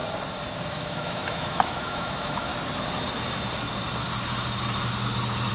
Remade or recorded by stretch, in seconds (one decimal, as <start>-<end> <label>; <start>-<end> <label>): 0.0-0.7 recorded; 0.7-2.5 remade; 2.5-5.5 recorded